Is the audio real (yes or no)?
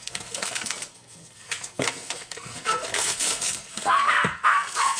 no